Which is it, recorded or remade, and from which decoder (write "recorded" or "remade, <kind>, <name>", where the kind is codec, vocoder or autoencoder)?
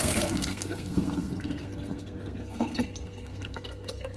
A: remade, codec, SNAC